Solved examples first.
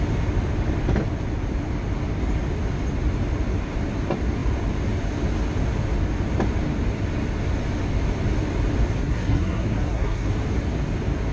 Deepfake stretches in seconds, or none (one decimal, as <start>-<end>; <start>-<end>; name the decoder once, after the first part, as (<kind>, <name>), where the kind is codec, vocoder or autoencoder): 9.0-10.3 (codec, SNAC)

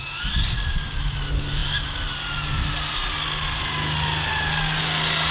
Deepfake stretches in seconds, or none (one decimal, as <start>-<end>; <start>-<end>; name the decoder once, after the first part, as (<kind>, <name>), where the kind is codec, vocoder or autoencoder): none

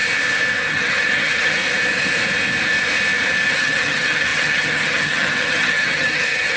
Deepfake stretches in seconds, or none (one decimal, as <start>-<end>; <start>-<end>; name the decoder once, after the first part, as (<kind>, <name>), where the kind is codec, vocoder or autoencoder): 0.7-1.6 (vocoder, HiFi-GAN); 3.5-6.6

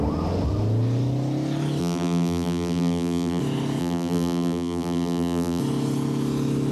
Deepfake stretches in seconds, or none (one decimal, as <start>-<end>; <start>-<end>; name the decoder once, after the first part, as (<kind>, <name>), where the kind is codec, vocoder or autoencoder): 1.8-3.4 (vocoder, BigVGAN v2); 3.8-5.6

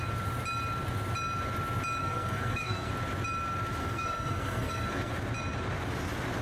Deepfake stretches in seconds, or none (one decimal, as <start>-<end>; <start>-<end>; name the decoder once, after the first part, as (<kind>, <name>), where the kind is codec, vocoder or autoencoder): 2.0-2.9 (codec, SNAC); 3.8-5.1

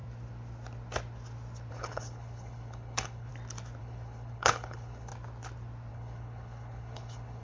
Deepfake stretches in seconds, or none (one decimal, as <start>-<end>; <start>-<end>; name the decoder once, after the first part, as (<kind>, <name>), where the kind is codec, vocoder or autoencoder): 1.7-3.3 (codec, HILCodec); 3.8-5.1; 5.9-7.4